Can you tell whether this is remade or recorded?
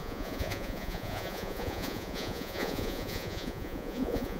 remade